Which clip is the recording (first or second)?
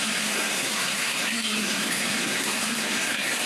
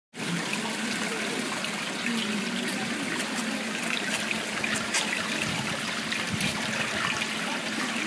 second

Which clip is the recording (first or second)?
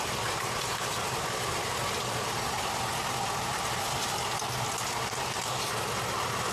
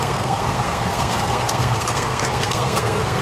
first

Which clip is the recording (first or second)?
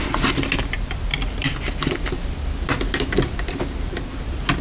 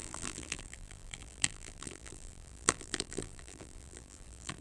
first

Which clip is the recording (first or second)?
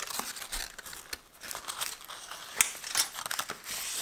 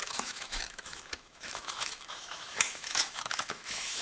first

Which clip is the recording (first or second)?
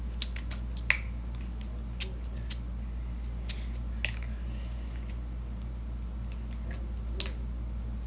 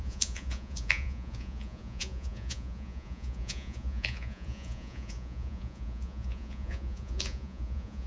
first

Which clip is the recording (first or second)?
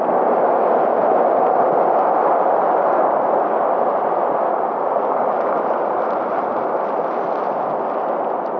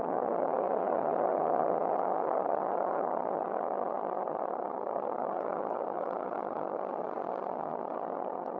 first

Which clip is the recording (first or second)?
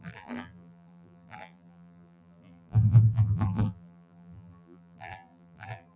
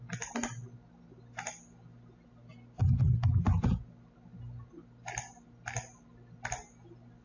second